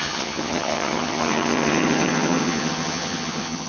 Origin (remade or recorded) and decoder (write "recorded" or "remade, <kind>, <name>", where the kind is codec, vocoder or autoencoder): remade, vocoder, HiFi-GAN